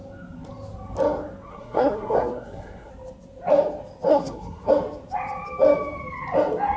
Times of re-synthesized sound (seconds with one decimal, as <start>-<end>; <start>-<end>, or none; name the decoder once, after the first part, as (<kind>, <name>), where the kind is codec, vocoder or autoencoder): 1.5-2.9 (codec, SNAC); 4.1-4.7